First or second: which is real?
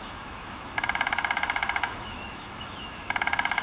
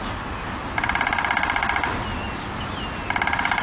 second